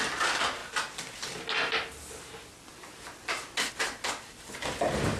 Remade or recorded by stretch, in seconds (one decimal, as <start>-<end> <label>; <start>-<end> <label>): 0.0-5.2 recorded